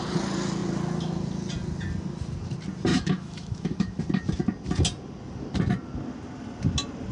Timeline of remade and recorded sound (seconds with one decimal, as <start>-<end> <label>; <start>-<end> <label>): 0.0-2.9 recorded; 2.9-4.0 remade; 4.0-7.1 recorded